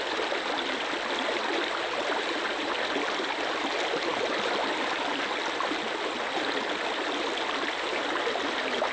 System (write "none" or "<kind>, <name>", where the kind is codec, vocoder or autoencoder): none